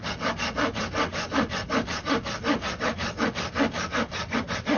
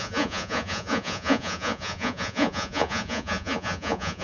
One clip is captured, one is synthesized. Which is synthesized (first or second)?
second